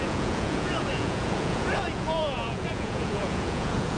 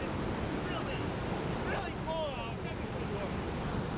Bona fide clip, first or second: second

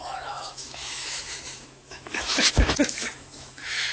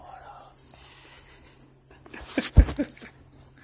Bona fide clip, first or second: second